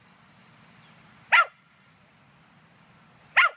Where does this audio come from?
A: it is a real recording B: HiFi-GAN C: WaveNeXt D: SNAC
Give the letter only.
A